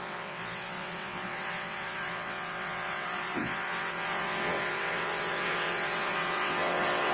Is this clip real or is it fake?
fake